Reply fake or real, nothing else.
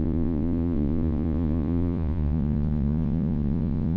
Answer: fake